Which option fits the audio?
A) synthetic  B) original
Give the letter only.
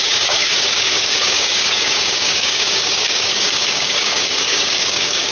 A